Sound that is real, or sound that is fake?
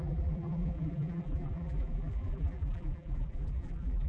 fake